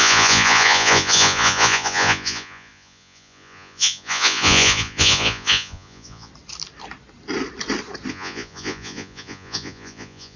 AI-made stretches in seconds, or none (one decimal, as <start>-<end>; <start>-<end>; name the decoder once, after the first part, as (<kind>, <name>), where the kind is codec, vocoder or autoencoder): 0.0-6.3 (vocoder, Vocos); 8.1-10.4